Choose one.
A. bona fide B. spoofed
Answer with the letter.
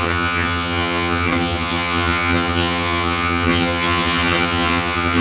B